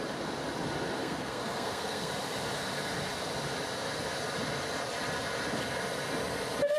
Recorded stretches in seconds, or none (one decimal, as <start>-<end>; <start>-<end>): 0.0-1.0; 2.1-6.8